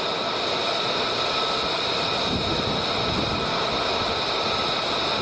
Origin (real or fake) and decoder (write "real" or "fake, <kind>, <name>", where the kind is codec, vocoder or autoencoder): real